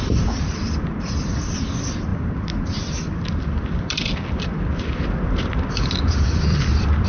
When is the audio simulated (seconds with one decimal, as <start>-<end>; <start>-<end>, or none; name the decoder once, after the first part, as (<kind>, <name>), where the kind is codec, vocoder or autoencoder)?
0.0-7.1 (vocoder, BigVGAN v2)